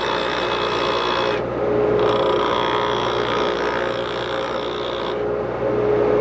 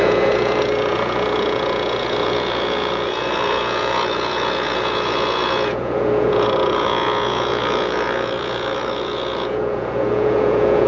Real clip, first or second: first